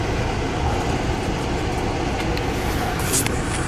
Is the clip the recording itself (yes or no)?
yes